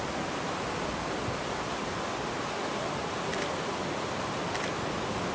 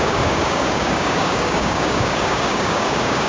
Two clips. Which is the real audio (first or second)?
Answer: first